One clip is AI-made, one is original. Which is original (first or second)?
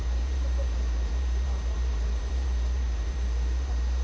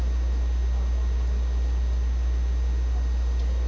second